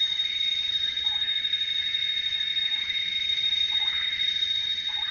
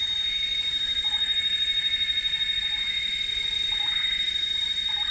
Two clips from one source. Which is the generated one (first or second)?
first